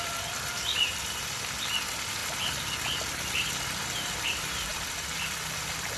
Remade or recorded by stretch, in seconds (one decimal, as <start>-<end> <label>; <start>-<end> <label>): 0.0-2.2 remade; 2.2-3.6 recorded; 3.6-6.0 remade